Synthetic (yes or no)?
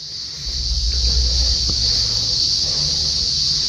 no